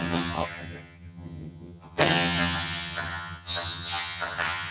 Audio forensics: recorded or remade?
remade